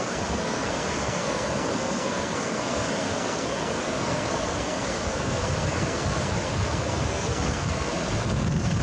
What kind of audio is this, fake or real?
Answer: fake